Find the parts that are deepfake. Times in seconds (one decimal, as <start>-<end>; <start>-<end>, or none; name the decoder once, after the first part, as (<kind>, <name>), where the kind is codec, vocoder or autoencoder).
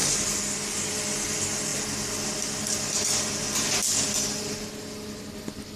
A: none